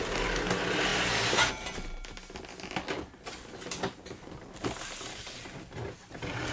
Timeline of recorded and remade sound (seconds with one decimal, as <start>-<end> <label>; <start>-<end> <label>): 0.0-6.5 recorded